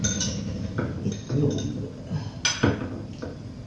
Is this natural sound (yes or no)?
yes